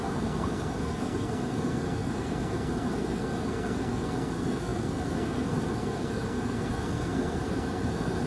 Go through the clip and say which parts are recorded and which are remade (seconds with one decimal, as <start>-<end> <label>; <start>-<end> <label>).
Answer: 0.0-8.3 remade